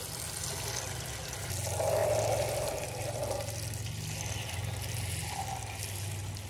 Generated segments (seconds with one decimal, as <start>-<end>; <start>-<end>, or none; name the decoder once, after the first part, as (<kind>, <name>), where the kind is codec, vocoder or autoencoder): 2.0-3.2 (vocoder, BigVGAN v2)